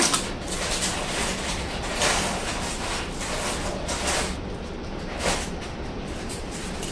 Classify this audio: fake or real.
fake